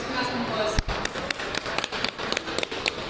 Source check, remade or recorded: recorded